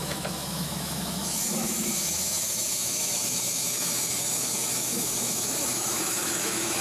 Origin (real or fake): fake